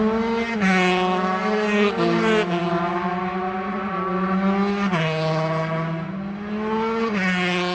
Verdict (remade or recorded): recorded